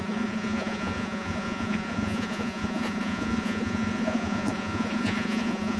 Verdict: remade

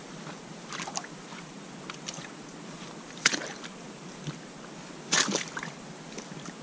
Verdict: recorded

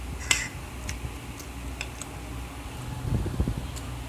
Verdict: recorded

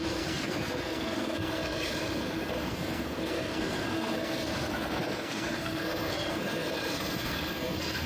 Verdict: remade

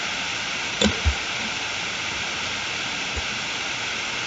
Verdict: recorded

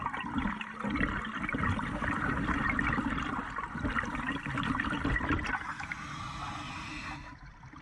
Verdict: recorded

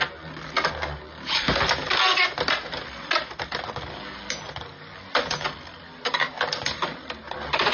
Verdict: recorded